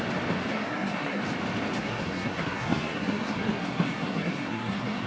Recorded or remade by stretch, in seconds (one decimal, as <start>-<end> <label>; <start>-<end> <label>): 0.0-0.5 recorded; 0.5-1.2 remade; 1.2-1.8 recorded; 1.8-5.1 remade